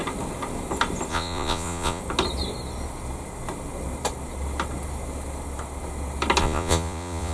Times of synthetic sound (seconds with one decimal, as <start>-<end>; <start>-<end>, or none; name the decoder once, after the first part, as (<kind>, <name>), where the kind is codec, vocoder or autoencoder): 1.1-2.0 (vocoder, Vocos); 6.4-7.3